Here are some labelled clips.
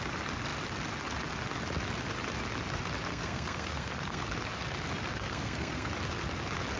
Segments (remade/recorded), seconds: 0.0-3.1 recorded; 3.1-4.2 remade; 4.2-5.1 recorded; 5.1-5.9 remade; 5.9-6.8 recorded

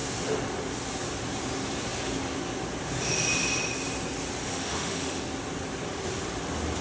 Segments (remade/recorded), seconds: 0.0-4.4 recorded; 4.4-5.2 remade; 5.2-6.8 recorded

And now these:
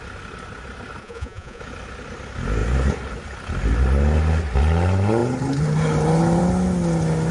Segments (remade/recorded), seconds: 0.0-1.0 recorded; 1.0-1.6 remade; 1.6-7.3 recorded

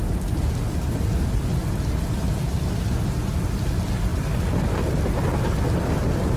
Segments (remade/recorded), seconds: 0.0-6.4 recorded

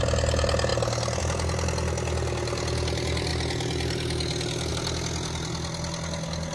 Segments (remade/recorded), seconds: 0.0-6.5 recorded